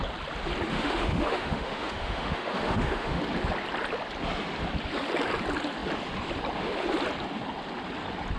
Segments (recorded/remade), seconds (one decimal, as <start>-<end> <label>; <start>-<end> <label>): 0.0-0.7 recorded; 0.7-3.2 remade; 3.2-8.4 recorded